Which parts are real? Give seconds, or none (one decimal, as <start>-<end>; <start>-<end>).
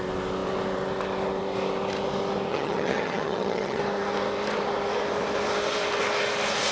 0.0-2.5; 3.8-6.7